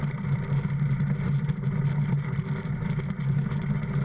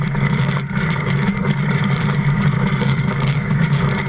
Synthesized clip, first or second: second